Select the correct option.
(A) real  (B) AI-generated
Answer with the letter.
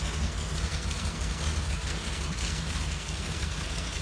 B